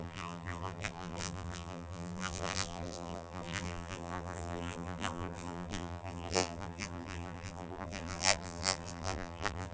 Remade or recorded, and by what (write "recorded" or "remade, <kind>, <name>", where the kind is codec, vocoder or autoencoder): remade, vocoder, BigVGAN v2